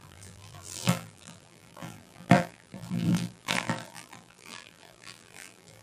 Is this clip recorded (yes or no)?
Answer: no